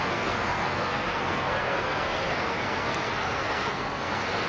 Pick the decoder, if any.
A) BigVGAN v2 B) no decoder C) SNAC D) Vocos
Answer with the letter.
C